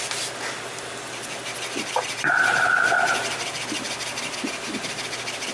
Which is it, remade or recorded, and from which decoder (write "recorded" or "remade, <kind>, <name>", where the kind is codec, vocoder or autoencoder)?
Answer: recorded